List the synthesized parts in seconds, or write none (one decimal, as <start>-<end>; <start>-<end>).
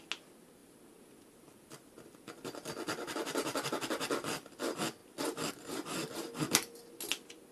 0.6-4.5